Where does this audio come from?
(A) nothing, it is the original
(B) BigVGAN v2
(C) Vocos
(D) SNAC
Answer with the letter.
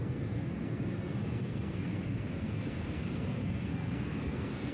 D